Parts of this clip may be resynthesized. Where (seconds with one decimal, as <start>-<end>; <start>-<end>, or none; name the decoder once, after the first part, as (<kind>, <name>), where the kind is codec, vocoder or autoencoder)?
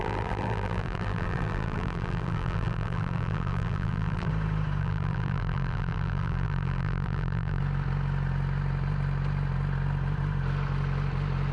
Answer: 0.0-4.3 (vocoder, BigVGAN v2); 4.8-7.6